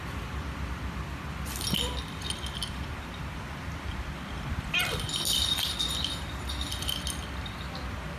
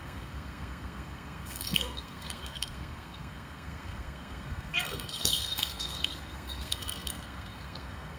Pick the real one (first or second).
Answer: first